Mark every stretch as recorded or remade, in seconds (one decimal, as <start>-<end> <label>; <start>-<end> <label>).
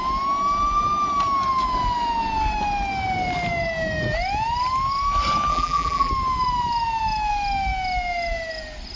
0.0-5.5 recorded; 5.5-6.1 remade; 6.1-9.0 recorded